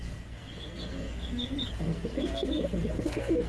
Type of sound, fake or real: fake